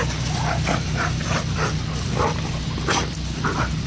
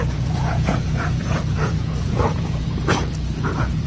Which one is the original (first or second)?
first